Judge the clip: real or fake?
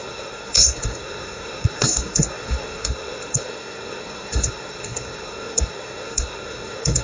fake